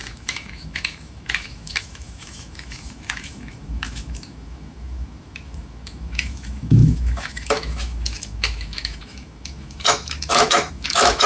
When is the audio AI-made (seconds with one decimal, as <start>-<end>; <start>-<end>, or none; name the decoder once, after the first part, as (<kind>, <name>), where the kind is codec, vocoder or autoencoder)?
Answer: 0.0-11.3 (autoencoder, DAC-VAE)